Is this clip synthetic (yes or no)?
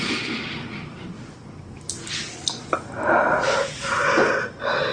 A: no